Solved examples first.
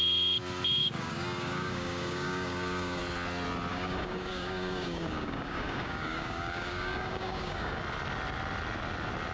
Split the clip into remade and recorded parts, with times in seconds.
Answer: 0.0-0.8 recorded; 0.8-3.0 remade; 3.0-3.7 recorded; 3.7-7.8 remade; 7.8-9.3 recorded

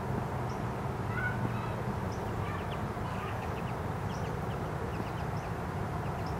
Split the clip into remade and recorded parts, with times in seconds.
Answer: 0.0-3.1 recorded; 3.1-3.6 remade; 3.6-6.4 recorded

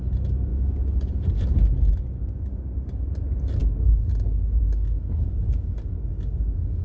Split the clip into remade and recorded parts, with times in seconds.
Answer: 0.0-6.8 recorded

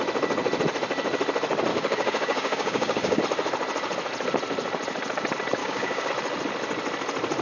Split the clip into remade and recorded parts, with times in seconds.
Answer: 0.0-1.7 recorded; 1.7-3.2 remade; 3.2-5.6 recorded; 5.6-6.1 remade; 6.1-7.4 recorded